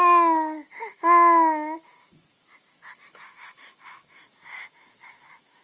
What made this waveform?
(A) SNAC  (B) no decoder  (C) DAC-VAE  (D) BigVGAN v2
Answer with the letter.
C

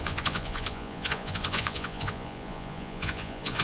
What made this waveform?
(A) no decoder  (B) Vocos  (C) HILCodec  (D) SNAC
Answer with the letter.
B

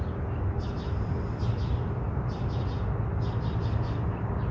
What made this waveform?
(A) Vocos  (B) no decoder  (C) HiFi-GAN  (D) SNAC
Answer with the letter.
B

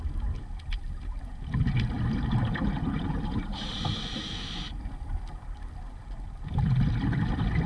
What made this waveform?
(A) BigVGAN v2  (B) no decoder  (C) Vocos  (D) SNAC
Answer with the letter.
A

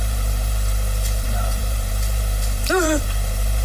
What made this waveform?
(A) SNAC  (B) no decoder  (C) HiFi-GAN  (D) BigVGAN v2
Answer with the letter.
D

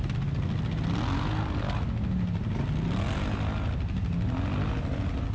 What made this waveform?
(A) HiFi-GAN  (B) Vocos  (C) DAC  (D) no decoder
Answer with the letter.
D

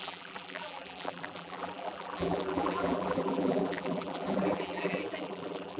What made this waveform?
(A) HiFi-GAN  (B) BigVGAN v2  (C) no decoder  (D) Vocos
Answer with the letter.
B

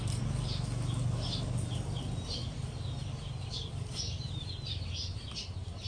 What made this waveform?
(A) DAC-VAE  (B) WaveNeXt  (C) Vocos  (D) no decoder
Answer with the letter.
D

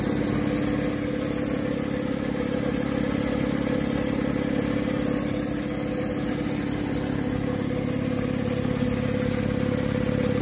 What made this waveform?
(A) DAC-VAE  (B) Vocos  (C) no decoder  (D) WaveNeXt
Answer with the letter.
C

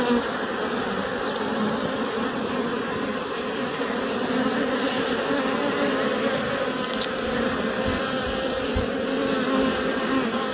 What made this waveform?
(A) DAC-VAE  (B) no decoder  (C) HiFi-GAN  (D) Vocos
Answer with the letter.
B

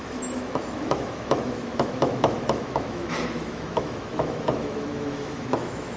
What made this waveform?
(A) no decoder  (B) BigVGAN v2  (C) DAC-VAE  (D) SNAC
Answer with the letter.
C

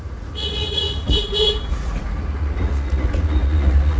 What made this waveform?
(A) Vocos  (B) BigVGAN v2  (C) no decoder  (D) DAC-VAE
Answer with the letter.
A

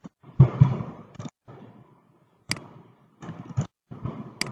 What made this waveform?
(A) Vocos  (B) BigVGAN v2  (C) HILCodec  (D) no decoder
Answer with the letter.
D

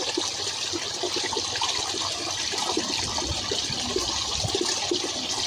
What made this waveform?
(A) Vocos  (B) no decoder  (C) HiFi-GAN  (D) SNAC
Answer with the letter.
B